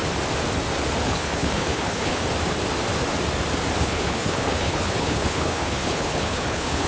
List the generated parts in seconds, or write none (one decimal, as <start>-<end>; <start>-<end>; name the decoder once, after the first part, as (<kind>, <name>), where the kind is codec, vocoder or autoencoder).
1.0-2.2 (codec, HILCodec); 3.8-6.9